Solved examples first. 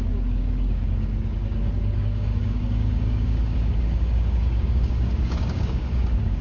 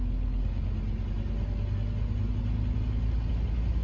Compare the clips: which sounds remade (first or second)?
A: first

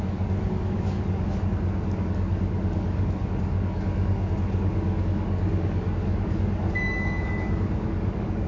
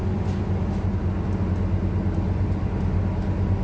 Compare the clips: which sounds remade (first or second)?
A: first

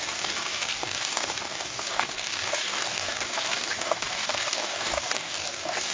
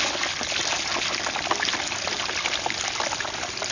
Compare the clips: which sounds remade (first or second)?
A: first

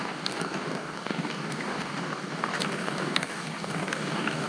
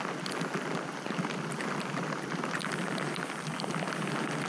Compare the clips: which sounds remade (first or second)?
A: first